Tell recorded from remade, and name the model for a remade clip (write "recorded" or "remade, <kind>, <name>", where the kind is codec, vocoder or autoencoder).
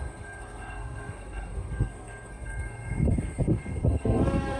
remade, codec, SNAC